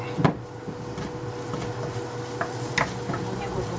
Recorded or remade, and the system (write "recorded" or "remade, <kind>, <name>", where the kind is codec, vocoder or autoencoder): recorded